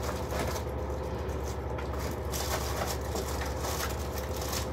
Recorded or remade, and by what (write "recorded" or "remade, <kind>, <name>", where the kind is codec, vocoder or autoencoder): recorded